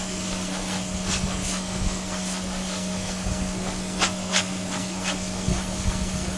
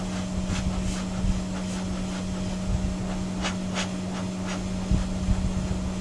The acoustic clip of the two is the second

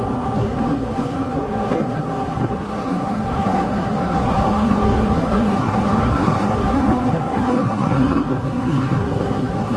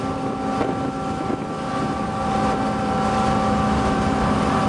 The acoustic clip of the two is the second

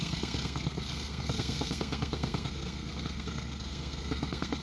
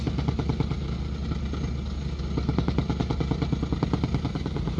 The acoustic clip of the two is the second